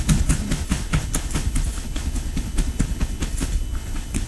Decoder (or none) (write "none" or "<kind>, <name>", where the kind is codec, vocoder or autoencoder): codec, HILCodec